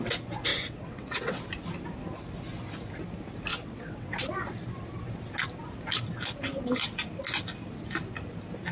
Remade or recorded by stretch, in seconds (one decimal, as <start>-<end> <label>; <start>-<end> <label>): 0.0-0.5 recorded; 0.5-1.4 remade; 1.4-3.5 recorded; 3.5-4.3 remade; 4.3-8.7 recorded